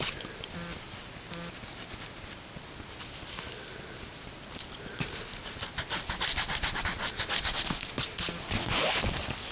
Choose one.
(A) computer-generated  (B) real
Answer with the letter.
B